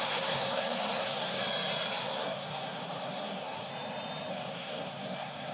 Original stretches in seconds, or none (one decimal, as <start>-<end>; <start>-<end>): 1.4-2.0; 3.7-4.3